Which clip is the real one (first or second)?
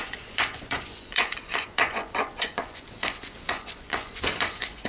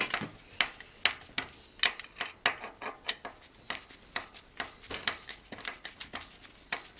second